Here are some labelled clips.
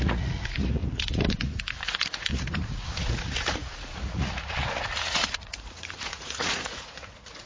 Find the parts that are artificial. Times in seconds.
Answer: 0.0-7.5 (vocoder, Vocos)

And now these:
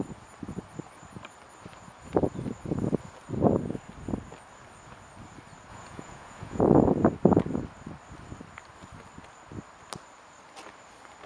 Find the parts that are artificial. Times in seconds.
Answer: 5.7-6.6 (vocoder, Vocos)

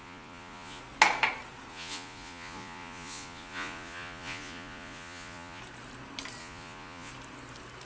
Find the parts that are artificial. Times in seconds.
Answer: 0.0-0.8 (vocoder, Vocos); 1.7-5.6; 6.4-7.1